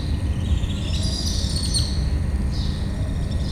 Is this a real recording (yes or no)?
yes